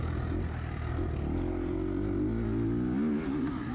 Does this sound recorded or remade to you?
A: recorded